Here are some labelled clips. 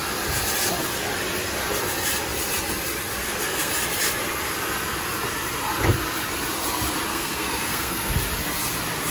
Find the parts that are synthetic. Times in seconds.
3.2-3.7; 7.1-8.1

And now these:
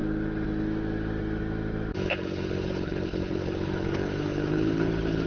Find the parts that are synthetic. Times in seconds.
1.9-5.3

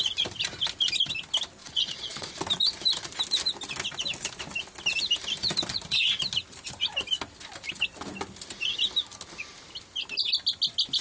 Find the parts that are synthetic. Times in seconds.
1.6-2.3

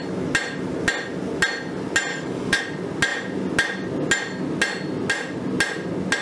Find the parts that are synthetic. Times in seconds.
2.1-2.6

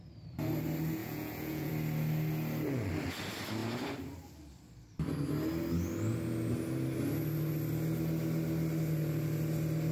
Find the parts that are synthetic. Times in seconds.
1.0-1.7

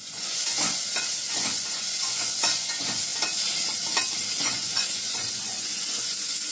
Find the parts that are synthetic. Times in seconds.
0.0-0.6; 1.3-3.1; 4.4-6.5